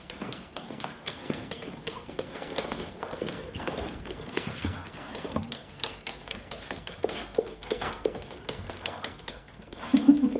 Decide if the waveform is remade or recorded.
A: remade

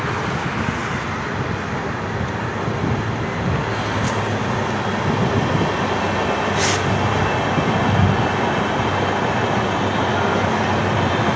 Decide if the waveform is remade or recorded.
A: recorded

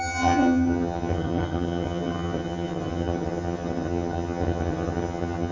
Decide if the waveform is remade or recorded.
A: remade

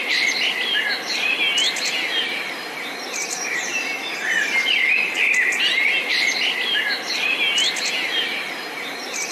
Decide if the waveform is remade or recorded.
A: recorded